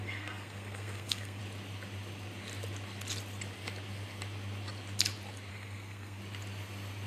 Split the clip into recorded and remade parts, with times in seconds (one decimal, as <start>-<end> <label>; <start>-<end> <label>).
0.0-1.4 remade; 1.4-5.5 recorded; 5.5-6.2 remade; 6.2-7.1 recorded